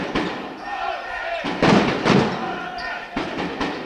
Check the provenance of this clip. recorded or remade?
recorded